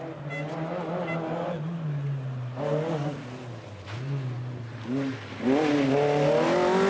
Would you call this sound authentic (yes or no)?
yes